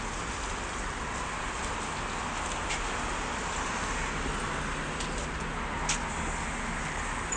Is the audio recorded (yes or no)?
yes